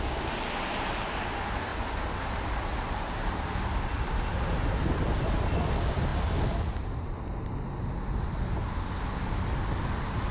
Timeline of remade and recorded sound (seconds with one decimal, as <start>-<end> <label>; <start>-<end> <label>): 0.0-10.3 recorded